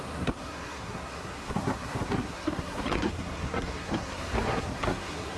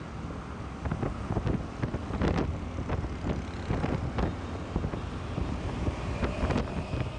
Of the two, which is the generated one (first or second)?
first